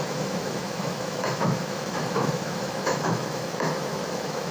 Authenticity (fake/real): fake